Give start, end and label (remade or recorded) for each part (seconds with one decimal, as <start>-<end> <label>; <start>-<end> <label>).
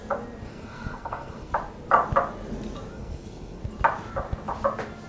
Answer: 0.0-0.5 recorded; 0.5-1.5 remade; 1.5-2.9 recorded; 2.9-3.6 remade; 3.6-5.1 recorded